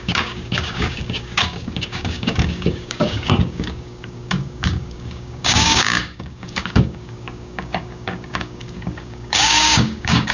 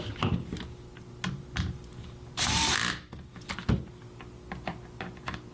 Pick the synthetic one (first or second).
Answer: first